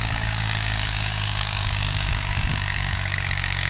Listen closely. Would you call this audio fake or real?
fake